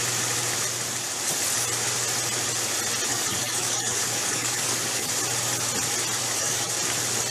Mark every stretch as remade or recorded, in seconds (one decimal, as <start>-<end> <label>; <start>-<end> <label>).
0.0-3.1 recorded; 3.1-5.1 remade; 5.1-6.2 recorded; 6.2-6.8 remade; 6.8-7.3 recorded